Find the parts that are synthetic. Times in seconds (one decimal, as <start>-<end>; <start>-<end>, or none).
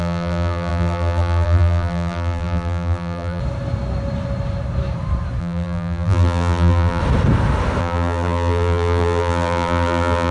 0.0-3.4; 5.4-7.0; 7.8-10.3